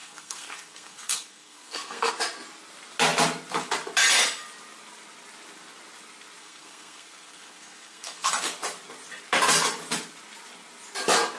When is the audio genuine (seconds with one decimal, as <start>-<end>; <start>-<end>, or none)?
2.1-6.4; 8.3-11.4